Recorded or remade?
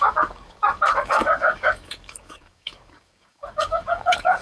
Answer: remade